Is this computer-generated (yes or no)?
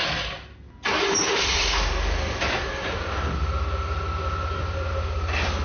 no